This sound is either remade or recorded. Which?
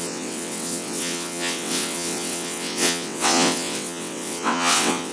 remade